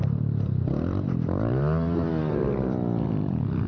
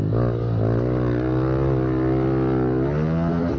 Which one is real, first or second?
second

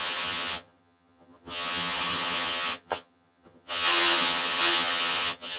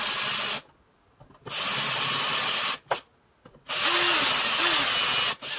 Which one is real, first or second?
second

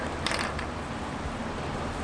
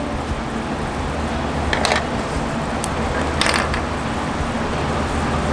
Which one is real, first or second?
second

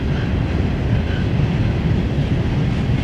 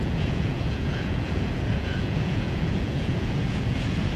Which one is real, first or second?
first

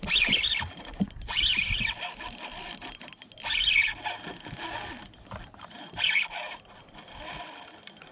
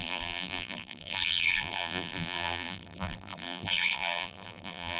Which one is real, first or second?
first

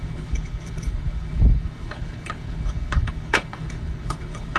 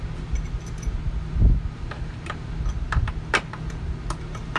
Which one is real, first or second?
second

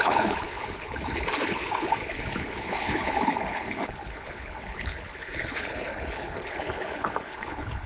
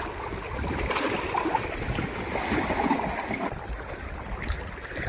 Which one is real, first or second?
second